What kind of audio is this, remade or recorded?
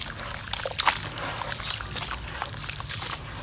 recorded